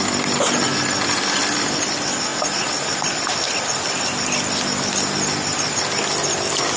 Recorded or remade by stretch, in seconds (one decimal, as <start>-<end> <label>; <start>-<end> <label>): 0.0-6.8 recorded